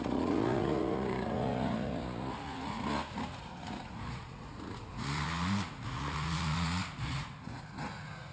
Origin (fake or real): fake